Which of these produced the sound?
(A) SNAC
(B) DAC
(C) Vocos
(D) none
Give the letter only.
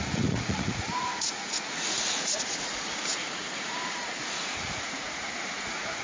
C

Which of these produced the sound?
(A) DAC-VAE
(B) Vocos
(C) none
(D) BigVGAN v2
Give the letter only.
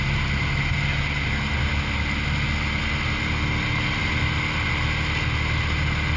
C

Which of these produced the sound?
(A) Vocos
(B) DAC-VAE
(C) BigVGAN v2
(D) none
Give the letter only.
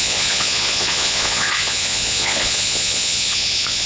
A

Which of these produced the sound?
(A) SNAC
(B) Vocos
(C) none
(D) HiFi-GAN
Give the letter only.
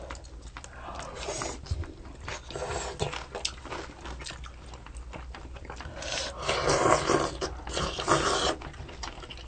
C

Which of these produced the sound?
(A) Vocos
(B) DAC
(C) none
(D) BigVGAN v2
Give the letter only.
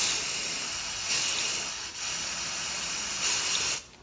C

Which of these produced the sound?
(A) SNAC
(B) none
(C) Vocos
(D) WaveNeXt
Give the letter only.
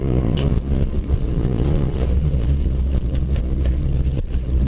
C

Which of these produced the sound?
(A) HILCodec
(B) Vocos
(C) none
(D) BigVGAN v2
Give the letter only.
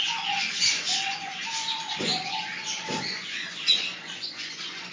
B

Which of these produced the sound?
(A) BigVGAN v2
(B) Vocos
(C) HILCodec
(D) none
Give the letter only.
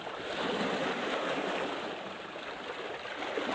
D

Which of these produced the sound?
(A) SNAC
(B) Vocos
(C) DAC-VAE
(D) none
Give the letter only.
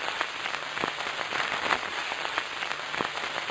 D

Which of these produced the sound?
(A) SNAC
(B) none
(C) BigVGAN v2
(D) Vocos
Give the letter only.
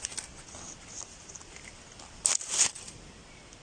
B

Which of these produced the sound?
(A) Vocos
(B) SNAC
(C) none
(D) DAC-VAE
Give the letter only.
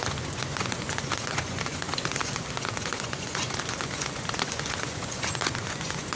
A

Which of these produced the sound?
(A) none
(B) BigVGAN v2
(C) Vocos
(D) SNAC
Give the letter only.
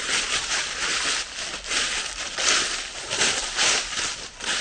A